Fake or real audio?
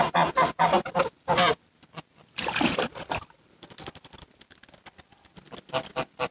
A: real